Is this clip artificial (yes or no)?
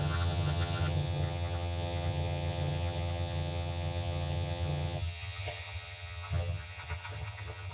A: yes